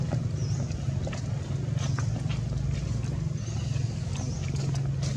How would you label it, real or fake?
real